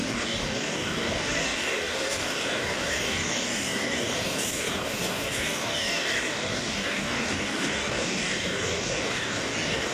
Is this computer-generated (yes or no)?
yes